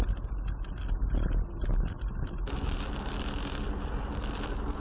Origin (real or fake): real